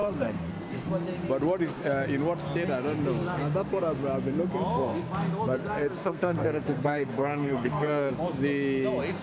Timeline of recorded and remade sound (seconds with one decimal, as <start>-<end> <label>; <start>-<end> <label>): 0.0-0.5 remade; 0.5-6.0 recorded; 6.0-8.1 remade; 8.1-9.2 recorded